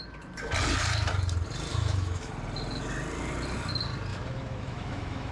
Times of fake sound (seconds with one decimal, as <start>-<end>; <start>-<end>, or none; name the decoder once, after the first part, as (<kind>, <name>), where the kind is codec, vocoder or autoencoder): 1.7-2.3 (autoencoder, DAC-VAE); 4.1-5.3